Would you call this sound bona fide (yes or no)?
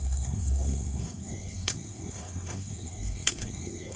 no